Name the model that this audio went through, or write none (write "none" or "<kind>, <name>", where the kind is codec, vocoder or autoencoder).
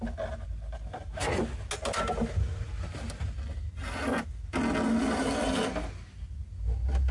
none